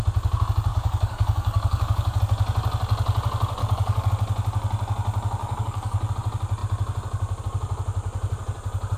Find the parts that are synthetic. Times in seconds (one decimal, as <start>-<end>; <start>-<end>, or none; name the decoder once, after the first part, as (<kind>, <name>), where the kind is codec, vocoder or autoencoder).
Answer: 0.7-2.2 (codec, DAC); 3.6-4.1; 5.4-6.1